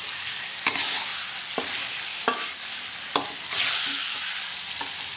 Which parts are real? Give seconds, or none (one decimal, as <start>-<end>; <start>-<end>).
0.0-2.1; 2.8-5.2